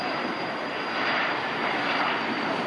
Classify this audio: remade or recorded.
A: remade